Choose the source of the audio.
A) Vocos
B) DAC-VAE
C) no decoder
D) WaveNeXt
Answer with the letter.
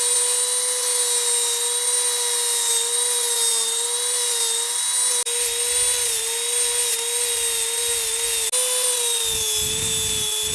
C